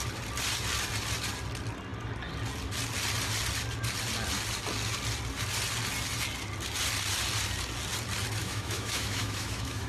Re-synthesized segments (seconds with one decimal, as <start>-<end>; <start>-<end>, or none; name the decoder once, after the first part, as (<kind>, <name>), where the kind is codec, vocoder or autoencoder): 8.4-9.9 (autoencoder, DAC-VAE)